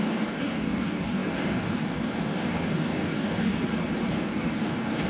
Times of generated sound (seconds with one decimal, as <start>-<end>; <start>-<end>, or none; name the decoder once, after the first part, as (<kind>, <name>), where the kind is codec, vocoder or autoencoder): 0.0-3.5 (codec, DAC); 4.1-5.1